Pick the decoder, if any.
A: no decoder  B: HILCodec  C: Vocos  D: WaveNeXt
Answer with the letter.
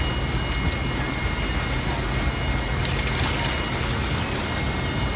A